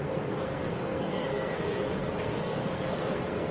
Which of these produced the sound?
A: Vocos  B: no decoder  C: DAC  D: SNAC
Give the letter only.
D